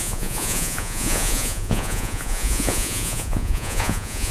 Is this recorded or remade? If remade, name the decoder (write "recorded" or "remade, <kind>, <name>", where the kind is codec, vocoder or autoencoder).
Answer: remade, vocoder, Vocos